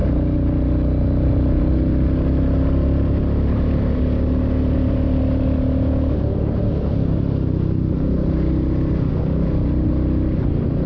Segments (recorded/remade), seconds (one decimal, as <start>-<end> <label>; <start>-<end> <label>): 0.0-10.9 recorded